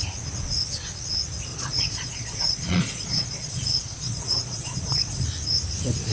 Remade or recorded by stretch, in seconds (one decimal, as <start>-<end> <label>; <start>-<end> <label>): 0.0-1.5 recorded; 1.5-5.2 remade; 5.2-6.1 recorded